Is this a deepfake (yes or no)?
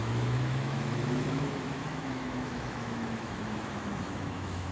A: yes